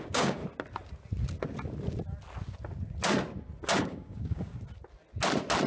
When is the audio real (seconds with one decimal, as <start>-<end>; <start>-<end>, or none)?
0.4-3.8; 4.5-5.7